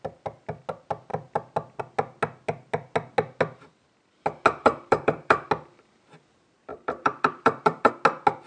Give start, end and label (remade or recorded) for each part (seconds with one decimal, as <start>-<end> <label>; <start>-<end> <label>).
0.0-4.6 recorded; 4.6-5.5 remade; 5.5-6.7 recorded; 6.7-7.9 remade; 7.9-8.5 recorded